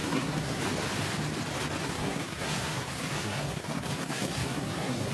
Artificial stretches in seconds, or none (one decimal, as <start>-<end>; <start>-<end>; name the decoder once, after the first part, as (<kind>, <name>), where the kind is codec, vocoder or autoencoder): 0.0-0.6 (codec, SNAC); 1.8-5.1